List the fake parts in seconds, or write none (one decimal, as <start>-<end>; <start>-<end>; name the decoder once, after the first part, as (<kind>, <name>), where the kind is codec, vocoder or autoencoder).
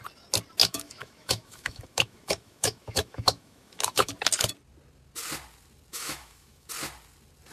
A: 0.6-4.1 (autoencoder, DAC-VAE); 5.9-6.7